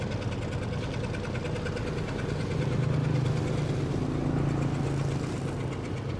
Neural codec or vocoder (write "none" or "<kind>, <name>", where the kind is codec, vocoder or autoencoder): none